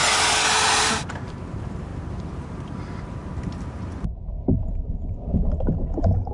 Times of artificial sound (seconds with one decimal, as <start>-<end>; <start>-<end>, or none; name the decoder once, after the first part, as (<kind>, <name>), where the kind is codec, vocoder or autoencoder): 0.8-1.9 (vocoder, BigVGAN v2); 3.0-6.3